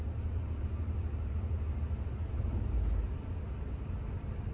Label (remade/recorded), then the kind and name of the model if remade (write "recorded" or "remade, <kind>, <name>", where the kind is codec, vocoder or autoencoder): recorded